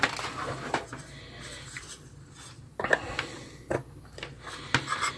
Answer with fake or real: real